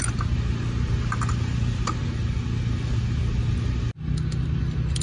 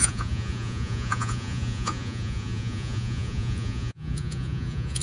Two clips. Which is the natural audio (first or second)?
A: first